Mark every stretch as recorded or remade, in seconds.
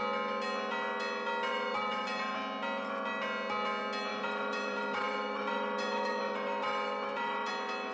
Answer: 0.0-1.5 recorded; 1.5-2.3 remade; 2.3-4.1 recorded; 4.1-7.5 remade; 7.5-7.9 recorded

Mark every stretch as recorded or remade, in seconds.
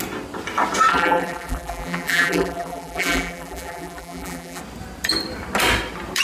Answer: 0.0-0.9 recorded; 0.9-4.6 remade; 4.6-6.2 recorded